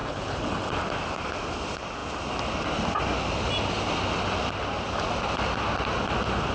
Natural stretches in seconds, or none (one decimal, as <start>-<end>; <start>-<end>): 0.8-6.5